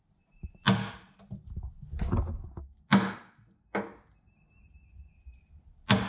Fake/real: real